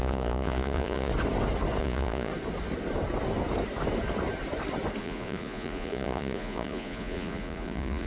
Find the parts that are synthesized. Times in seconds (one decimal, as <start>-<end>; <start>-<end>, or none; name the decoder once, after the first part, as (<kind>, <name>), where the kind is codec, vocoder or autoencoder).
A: 0.0-1.1 (vocoder, Vocos); 1.8-2.3; 5.0-8.1